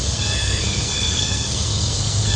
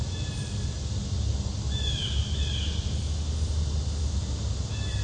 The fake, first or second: first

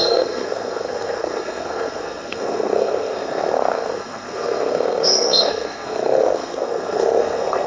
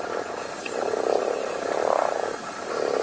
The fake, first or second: first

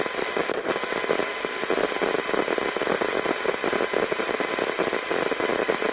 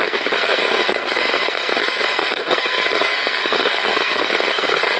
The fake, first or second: second